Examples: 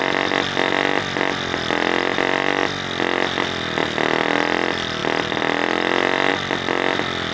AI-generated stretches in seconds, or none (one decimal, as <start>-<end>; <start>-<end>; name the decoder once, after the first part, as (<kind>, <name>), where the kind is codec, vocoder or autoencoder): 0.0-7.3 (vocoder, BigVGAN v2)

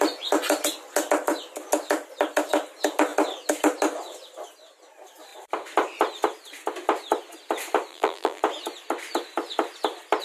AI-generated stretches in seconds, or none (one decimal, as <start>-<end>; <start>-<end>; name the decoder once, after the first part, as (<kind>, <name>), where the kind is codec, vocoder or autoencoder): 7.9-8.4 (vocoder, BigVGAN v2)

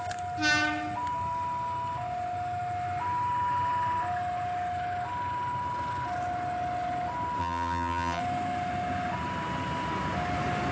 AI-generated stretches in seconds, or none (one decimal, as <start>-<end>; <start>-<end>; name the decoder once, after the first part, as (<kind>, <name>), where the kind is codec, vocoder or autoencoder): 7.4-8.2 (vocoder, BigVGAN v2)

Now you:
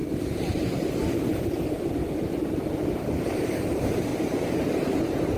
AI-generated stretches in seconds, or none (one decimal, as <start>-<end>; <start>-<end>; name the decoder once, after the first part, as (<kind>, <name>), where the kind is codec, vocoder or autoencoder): 0.0-2.0 (vocoder, BigVGAN v2); 2.9-4.1; 5.0-5.4

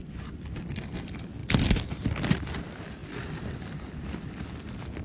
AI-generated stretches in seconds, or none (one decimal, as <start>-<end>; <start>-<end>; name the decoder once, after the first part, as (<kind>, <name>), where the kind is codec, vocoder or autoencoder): none

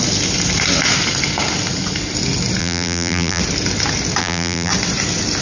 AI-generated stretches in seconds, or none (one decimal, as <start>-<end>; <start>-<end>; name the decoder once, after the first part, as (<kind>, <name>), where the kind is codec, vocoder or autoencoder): 2.6-3.4 (vocoder, BigVGAN v2); 4.2-4.7

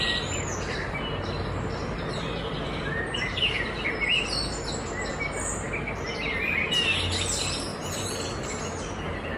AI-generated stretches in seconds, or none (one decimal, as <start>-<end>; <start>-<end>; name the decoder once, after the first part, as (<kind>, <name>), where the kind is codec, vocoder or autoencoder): none